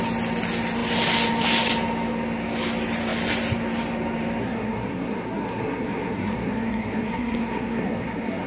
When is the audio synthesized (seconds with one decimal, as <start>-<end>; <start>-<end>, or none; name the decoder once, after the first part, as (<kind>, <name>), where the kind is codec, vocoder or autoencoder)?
4.4-8.5 (codec, SNAC)